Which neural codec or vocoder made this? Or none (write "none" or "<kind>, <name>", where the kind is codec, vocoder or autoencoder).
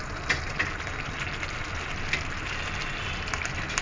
none